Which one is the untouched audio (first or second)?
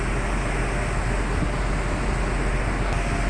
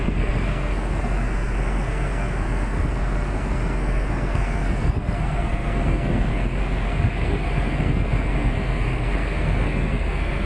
first